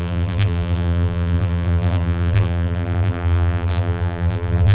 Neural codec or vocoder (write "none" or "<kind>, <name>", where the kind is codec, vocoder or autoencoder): vocoder, BigVGAN v2